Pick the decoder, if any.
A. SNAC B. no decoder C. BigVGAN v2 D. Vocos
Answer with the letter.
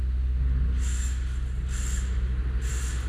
B